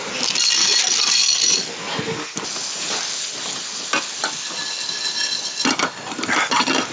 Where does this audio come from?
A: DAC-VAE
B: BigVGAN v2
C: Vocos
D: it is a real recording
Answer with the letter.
D